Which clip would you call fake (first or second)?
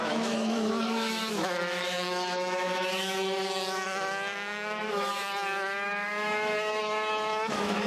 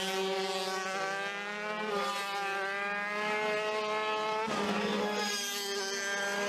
first